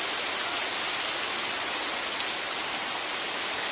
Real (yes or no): yes